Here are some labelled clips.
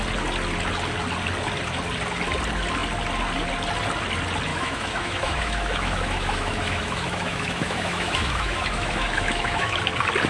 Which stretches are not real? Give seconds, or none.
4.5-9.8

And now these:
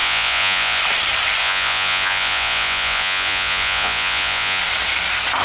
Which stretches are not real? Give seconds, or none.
0.0-0.8; 1.4-4.6

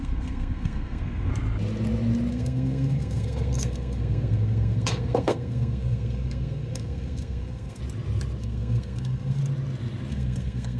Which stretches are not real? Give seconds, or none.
0.0-1.3; 2.3-7.8; 8.4-9.4; 10.1-10.8

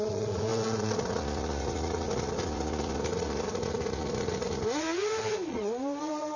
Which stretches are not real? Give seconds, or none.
0.0-6.4

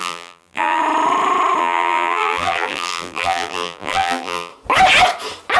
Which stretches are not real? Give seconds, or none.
0.0-0.8; 1.6-4.5

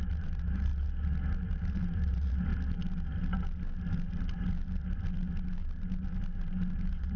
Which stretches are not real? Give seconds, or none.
0.0-0.7; 1.6-2.5; 6.8-7.2